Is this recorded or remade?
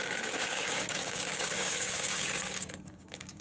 remade